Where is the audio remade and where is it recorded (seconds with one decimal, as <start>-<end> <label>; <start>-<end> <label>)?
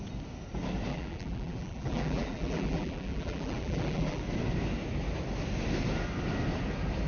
0.0-0.9 recorded; 0.9-4.2 remade; 4.2-7.1 recorded